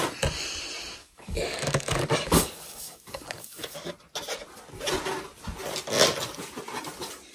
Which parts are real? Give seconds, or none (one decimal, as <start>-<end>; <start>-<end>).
0.0-1.0; 3.9-7.3